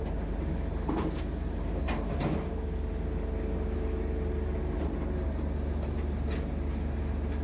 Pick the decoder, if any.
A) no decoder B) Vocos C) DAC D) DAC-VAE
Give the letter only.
A